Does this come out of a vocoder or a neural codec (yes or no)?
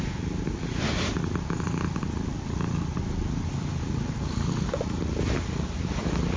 no